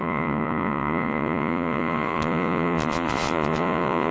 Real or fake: fake